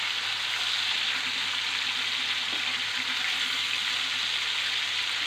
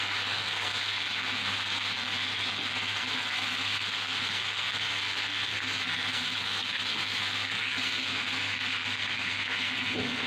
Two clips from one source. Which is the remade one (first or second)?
second